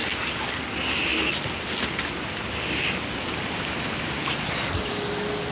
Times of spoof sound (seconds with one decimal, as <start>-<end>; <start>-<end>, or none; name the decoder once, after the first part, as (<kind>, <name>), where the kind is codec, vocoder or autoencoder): none